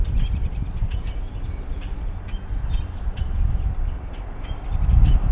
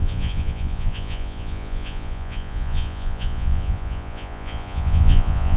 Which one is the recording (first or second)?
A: first